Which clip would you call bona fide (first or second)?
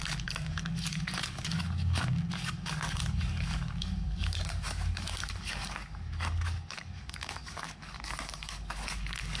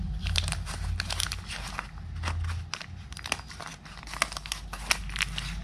second